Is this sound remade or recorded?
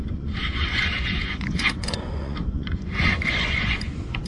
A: remade